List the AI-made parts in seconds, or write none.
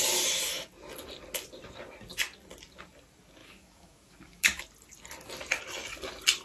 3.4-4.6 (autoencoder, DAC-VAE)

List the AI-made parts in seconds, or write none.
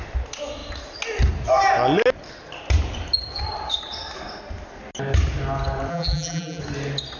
5.9-6.6 (vocoder, BigVGAN v2)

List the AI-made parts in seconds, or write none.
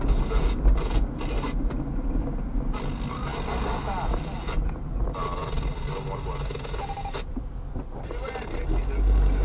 none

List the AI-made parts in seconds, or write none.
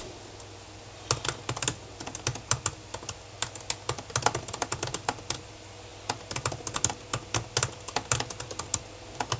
none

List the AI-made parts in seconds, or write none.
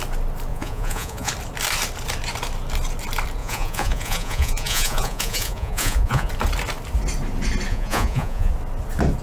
0.5-1.3 (vocoder, Vocos); 3.4-6.3; 7.7-8.5